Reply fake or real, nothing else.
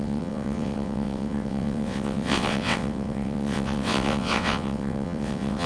fake